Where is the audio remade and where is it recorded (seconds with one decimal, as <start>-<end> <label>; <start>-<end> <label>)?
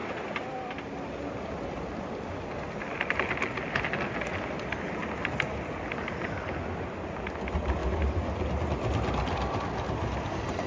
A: 0.0-10.7 recorded